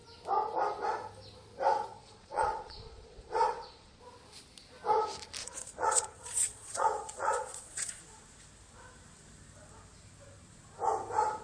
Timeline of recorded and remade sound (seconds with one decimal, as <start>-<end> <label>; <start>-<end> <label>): 0.0-1.9 recorded; 1.9-4.0 remade; 4.0-5.4 recorded; 5.4-8.0 remade; 8.0-11.4 recorded